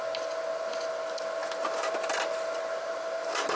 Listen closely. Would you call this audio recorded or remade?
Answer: recorded